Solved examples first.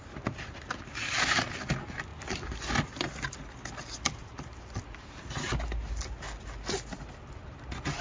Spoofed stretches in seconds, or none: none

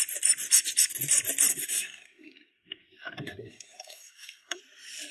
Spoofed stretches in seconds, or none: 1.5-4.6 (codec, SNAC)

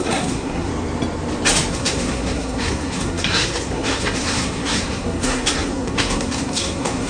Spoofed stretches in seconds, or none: 0.0-0.7 (codec, SNAC); 1.7-7.1

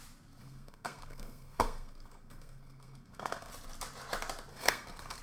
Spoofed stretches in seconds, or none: 0.4-3.5 (codec, SNAC); 4.5-5.2

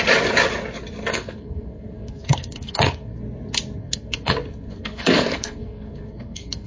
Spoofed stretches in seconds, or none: 1.1-3.2 (codec, SNAC); 3.8-6.7